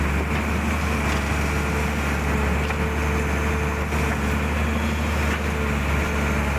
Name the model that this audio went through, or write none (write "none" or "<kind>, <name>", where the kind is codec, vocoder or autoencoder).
none